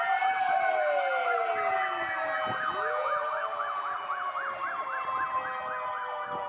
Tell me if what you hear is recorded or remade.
recorded